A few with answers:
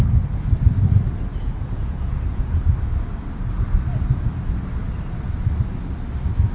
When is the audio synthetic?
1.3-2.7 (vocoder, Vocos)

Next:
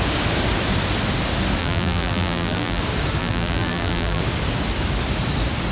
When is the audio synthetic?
1.6-2.8 (vocoder, BigVGAN v2); 3.2-4.2

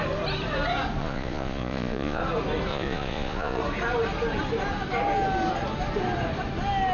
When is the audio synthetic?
1.0-2.2 (vocoder, Vocos); 2.7-3.6

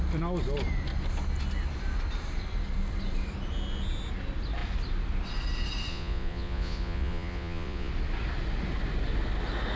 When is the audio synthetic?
5.9-7.9 (vocoder, Vocos)

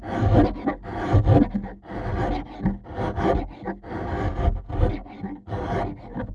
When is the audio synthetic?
none

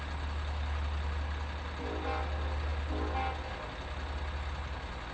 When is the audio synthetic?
none